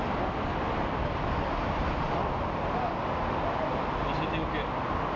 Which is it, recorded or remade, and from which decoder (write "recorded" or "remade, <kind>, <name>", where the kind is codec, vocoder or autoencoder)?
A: recorded